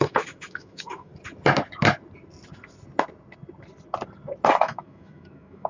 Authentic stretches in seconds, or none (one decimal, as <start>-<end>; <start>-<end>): 1.1-4.5